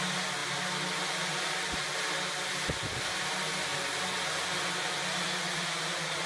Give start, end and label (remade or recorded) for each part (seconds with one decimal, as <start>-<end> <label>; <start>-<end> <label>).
0.0-6.3 recorded